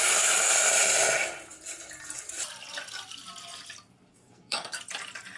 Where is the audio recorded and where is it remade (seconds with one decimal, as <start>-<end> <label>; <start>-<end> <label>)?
0.0-4.1 recorded; 4.1-4.8 remade; 4.8-5.4 recorded